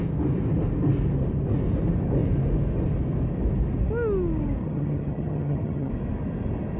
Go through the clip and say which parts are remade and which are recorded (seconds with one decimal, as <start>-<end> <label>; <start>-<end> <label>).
0.0-4.6 recorded; 4.6-5.9 remade; 5.9-6.8 recorded